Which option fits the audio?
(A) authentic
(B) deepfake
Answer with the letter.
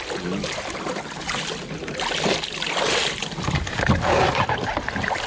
A